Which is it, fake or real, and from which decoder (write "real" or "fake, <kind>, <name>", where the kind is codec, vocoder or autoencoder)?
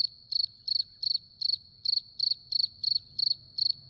real